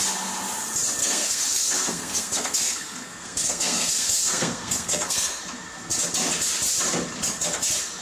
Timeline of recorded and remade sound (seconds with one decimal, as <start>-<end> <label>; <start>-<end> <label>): 0.0-1.0 recorded; 1.0-5.4 remade; 5.4-8.0 recorded